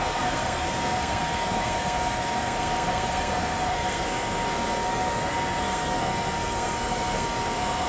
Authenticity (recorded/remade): remade